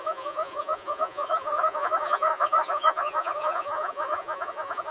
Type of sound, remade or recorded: remade